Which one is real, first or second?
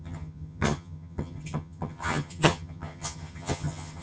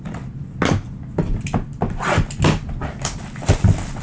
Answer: second